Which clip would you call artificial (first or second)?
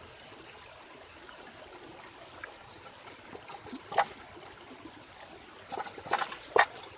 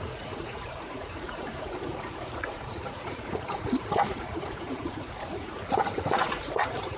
second